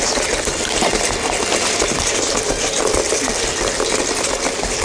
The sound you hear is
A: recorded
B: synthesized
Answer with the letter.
A